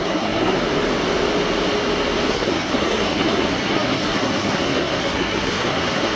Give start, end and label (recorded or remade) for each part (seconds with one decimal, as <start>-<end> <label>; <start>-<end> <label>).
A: 0.0-0.5 remade; 0.5-2.3 recorded; 2.3-6.2 remade